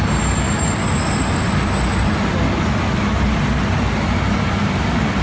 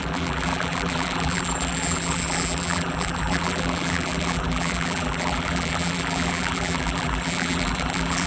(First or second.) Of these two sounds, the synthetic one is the second